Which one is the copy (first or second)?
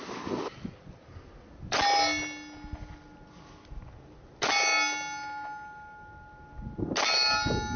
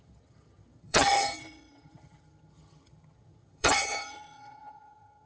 second